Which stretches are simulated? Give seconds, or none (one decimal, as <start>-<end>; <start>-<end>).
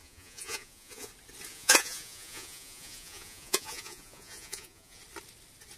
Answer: 0.0-1.1; 1.5-5.0